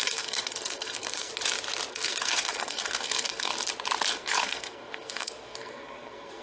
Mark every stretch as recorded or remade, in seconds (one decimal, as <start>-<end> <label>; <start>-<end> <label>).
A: 0.0-1.3 remade; 1.3-1.9 recorded; 1.9-3.5 remade; 3.5-4.1 recorded; 4.1-6.4 remade